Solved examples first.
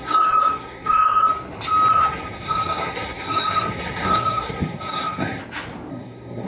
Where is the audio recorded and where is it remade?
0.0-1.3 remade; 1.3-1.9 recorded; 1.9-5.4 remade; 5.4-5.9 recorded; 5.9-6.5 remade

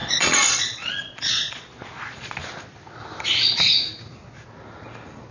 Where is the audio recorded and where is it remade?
0.0-2.4 remade; 2.4-5.3 recorded